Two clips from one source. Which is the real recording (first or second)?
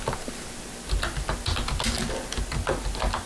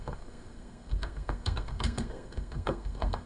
first